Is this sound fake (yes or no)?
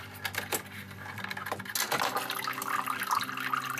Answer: no